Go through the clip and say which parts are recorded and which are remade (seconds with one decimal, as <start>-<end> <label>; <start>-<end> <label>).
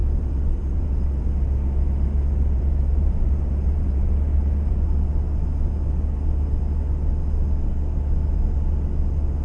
0.0-4.9 remade; 4.9-9.4 recorded